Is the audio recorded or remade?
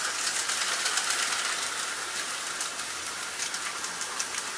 recorded